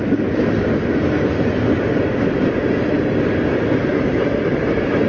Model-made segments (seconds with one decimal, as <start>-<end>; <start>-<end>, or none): 3.8-4.6